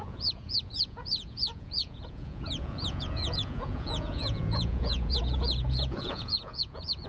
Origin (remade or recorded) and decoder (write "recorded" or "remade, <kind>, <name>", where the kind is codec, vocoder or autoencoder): remade, vocoder, Vocos